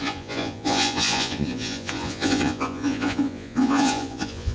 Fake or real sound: fake